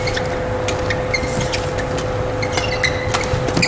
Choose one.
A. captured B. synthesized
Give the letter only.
A